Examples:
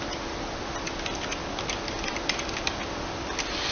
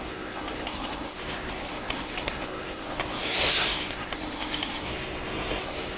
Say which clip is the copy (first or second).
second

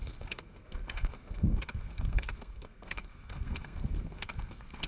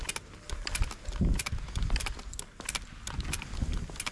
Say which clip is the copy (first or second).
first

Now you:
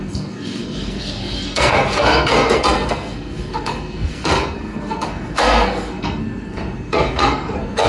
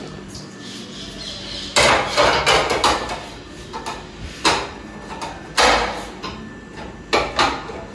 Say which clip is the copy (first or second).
first